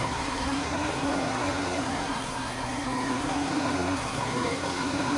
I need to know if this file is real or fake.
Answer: fake